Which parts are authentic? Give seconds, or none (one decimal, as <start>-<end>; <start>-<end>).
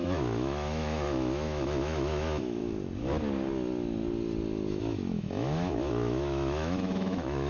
2.6-4.7